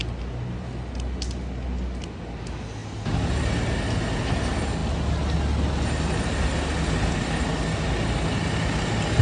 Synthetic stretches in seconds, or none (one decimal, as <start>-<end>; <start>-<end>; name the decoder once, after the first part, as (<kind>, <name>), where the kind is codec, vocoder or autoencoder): none